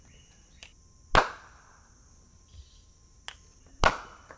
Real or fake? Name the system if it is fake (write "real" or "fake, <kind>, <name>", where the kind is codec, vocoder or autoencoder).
real